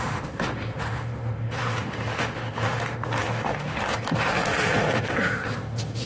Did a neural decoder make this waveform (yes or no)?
yes